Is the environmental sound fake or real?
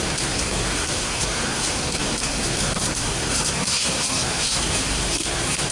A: fake